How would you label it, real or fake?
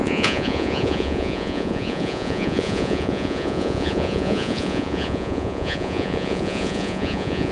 fake